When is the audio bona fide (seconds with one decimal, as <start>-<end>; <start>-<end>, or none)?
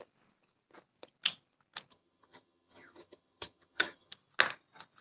0.0-1.9; 4.1-5.0